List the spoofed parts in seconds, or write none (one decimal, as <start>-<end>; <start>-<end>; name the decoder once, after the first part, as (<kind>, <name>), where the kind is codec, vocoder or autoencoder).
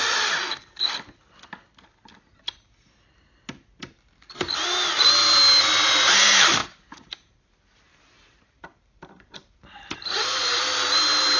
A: 6.6-10.4 (vocoder, BigVGAN v2)